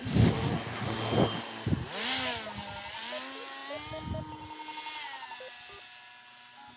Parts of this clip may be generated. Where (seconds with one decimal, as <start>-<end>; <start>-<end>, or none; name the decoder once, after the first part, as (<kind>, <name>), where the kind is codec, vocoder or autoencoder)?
none